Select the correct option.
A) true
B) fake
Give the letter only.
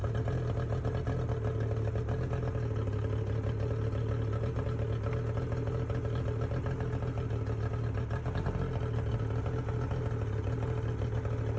A